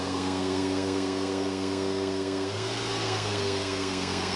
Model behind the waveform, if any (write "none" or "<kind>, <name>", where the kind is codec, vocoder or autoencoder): codec, SNAC